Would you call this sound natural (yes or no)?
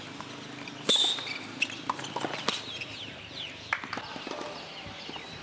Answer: yes